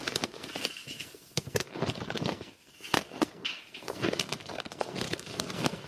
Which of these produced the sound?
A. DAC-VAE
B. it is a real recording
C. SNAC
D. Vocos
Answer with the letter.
C